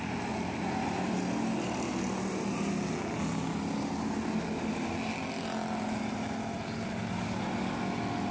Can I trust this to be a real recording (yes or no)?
yes